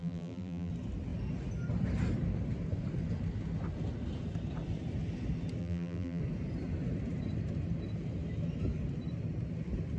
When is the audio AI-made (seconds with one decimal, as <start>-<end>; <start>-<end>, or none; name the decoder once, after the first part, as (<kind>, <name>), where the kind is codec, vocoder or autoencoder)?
0.0-0.7 (vocoder, BigVGAN v2); 5.6-6.2